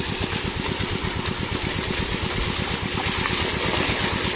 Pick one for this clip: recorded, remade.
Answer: recorded